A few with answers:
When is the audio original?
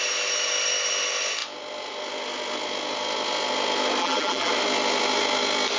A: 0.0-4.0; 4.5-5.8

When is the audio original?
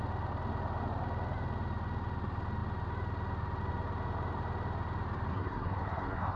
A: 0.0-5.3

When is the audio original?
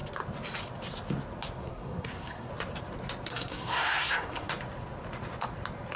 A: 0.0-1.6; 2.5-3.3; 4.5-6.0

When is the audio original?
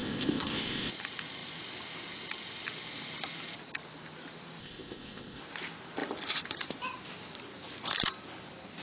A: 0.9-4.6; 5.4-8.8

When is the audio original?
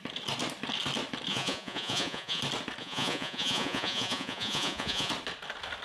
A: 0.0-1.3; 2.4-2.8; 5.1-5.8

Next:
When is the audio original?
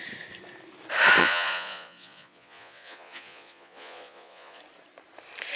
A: 0.0-1.2; 4.6-5.6